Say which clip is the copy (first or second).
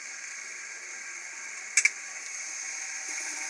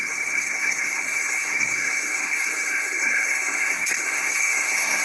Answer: second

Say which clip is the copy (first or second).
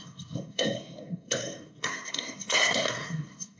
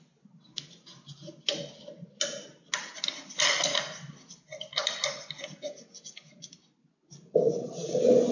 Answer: first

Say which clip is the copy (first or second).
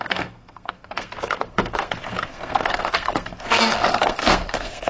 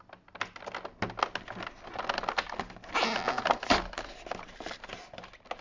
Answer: first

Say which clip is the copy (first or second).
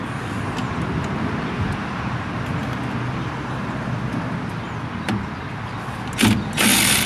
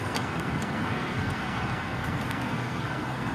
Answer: second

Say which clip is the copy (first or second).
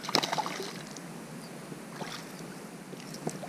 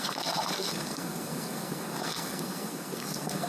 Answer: second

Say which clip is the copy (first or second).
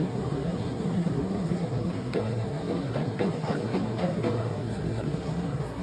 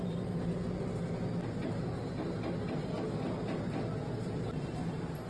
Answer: first